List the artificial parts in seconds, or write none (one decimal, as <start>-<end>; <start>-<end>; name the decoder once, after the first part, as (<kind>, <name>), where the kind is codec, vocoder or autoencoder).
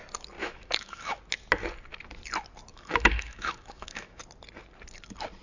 0.4-1.2 (autoencoder, DAC-VAE); 2.7-4.2